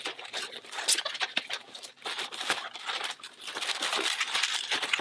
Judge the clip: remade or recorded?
remade